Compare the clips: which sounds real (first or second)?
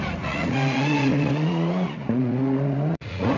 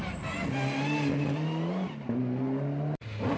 second